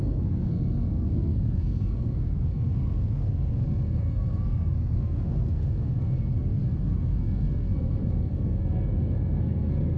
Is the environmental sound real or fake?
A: fake